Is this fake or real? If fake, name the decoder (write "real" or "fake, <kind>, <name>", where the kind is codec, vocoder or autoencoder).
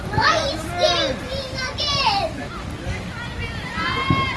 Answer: real